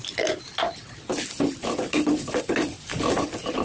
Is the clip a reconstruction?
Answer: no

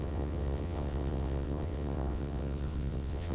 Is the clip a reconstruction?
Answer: yes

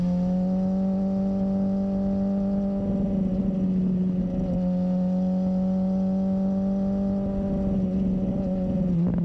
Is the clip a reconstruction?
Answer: no